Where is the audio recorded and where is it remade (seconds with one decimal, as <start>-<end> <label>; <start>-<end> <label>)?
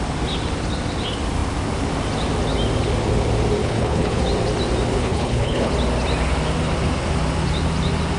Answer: 0.0-3.6 recorded; 3.6-4.2 remade; 4.2-5.0 recorded; 5.0-5.7 remade; 5.7-8.2 recorded